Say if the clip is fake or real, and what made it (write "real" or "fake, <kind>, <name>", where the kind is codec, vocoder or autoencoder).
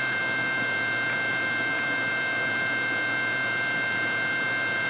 real